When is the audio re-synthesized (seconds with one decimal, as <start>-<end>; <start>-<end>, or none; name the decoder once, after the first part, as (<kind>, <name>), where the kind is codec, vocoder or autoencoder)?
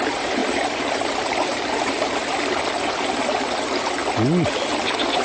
none